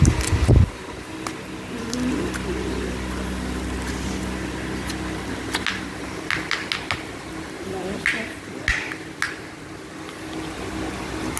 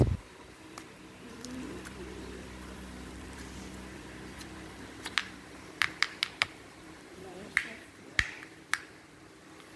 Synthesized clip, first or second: second